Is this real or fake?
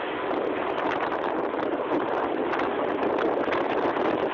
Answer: real